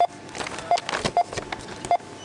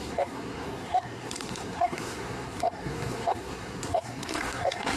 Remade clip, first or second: second